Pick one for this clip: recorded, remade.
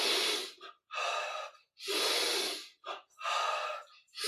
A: recorded